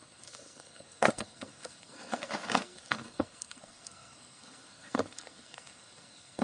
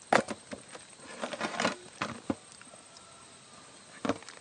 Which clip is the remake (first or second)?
first